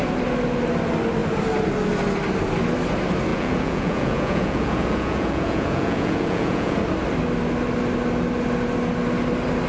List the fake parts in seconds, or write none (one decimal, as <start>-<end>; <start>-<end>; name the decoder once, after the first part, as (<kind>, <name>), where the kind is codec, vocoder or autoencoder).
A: 3.3-6.8 (vocoder, Vocos)